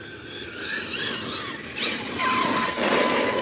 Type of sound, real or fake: real